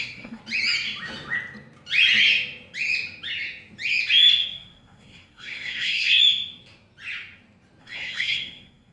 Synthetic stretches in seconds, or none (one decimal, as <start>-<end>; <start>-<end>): 0.0-0.4; 4.4-6.2; 7.8-8.9